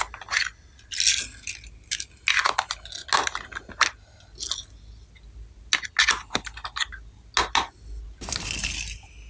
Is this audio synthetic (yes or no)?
no